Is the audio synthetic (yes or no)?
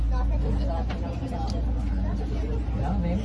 no